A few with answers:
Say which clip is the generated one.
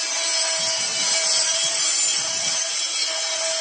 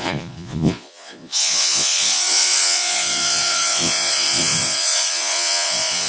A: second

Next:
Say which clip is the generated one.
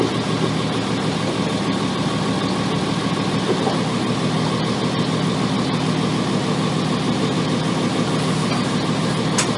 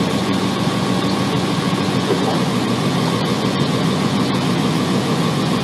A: second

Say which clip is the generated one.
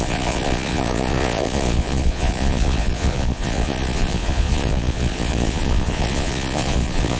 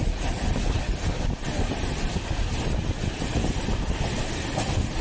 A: first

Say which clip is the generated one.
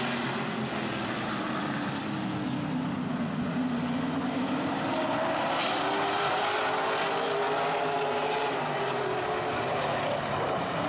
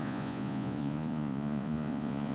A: second